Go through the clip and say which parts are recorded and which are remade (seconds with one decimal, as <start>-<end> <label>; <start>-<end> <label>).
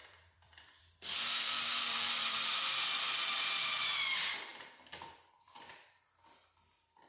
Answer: 0.0-2.8 remade; 2.8-4.5 recorded; 4.5-5.9 remade; 5.9-7.1 recorded